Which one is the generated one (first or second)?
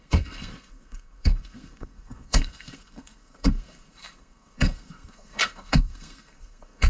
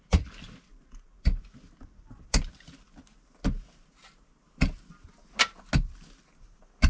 first